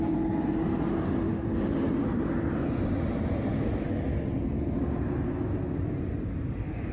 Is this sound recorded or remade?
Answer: recorded